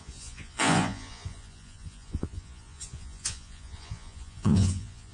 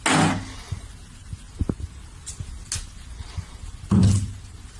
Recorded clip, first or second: second